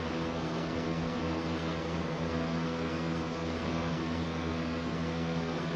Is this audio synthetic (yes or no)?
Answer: yes